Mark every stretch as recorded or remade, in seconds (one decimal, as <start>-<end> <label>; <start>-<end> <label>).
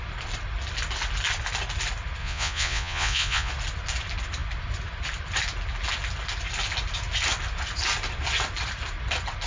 0.0-2.2 recorded; 2.2-3.5 remade; 3.5-9.5 recorded